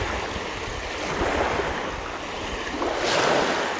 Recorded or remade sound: recorded